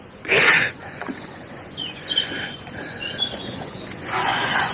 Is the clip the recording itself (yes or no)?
no